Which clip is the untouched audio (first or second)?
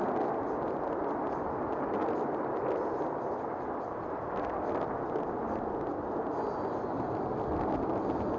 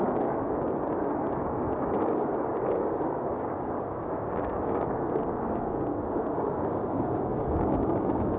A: first